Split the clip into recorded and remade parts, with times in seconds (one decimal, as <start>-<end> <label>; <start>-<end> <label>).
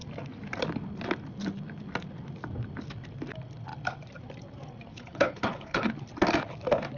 0.0-4.9 recorded; 4.9-5.9 remade; 5.9-7.0 recorded